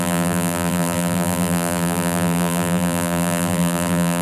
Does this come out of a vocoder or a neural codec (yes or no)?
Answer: yes